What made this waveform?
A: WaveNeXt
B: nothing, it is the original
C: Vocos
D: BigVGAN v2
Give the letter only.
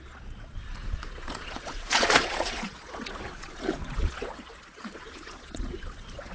C